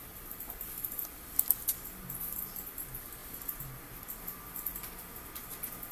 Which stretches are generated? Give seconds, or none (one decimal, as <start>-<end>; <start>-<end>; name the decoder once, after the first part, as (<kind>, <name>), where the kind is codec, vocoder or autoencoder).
0.0-3.2 (vocoder, BigVGAN v2); 4.2-4.7